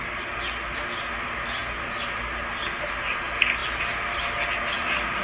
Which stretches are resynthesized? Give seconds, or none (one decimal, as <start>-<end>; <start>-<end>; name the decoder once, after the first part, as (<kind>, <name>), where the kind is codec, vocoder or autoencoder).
none